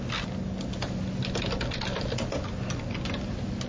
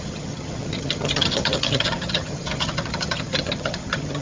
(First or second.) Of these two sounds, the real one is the first